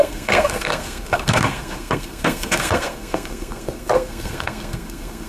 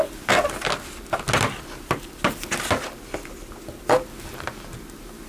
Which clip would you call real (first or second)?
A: second